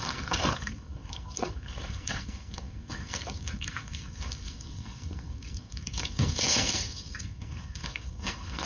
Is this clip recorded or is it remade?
remade